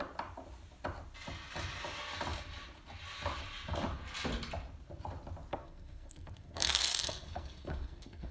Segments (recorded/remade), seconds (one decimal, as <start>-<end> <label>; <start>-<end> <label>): 0.0-5.5 recorded; 5.5-8.3 remade